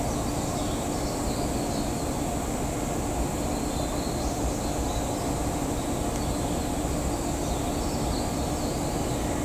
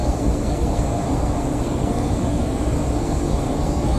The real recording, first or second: first